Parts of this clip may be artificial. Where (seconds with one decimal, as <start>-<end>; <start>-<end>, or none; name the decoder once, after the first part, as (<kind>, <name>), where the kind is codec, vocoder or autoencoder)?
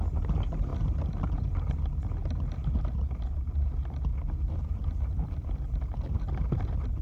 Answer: none